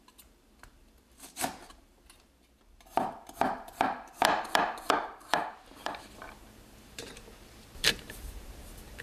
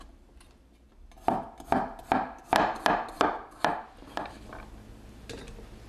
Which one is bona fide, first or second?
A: second